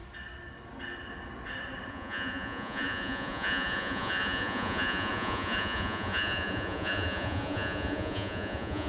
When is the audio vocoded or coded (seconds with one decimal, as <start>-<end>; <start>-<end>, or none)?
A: 1.9-8.9